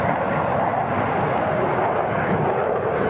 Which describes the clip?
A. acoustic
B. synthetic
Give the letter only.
A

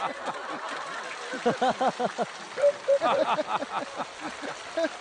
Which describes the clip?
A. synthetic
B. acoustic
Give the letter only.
B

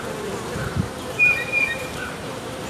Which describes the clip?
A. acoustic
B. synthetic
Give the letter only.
B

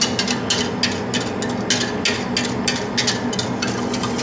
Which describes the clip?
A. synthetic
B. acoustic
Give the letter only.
B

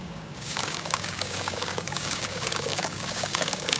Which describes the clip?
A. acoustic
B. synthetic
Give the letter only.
B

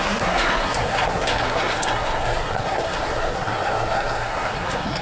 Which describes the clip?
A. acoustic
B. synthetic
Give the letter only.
B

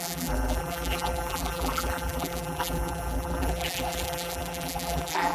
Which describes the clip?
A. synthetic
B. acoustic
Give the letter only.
A